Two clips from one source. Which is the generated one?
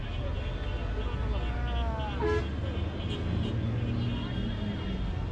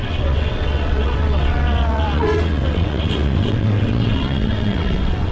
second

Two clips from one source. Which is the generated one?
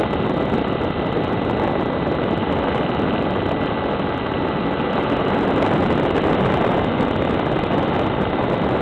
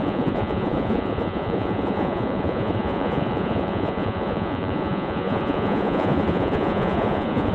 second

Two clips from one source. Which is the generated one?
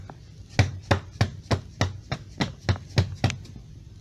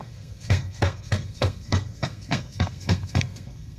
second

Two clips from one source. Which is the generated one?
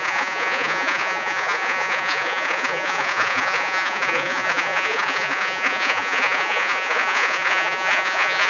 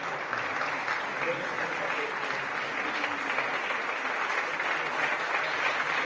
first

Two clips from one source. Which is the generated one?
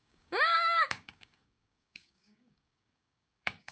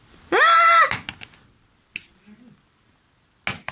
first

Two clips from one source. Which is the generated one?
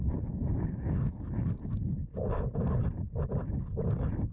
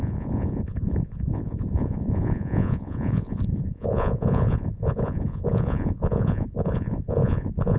second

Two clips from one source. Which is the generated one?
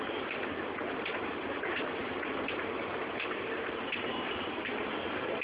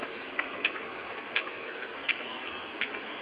second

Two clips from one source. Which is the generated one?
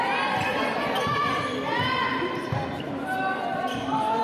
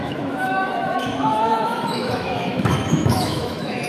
second